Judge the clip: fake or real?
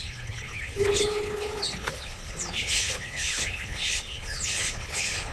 fake